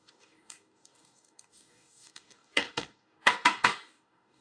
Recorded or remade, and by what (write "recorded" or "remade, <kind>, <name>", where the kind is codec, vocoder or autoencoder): remade, codec, DAC